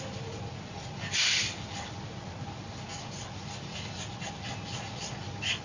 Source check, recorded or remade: remade